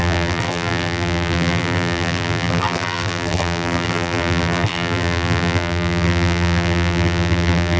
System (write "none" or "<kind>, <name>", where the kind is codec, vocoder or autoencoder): vocoder, BigVGAN v2